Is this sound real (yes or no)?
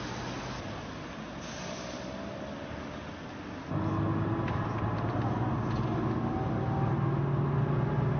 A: yes